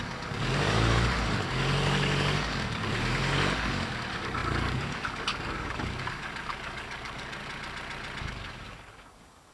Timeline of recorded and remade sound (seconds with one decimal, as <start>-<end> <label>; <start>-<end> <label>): 0.0-7.4 remade; 7.4-8.2 recorded; 8.2-9.5 remade